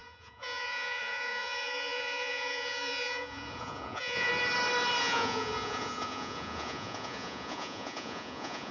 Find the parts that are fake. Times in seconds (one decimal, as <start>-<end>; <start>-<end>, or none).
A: 0.0-4.3; 5.0-8.7